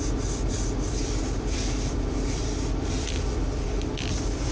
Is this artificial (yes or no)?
yes